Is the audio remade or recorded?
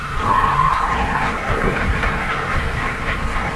remade